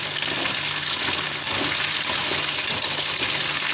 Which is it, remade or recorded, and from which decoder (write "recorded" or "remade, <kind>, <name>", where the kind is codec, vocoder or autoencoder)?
recorded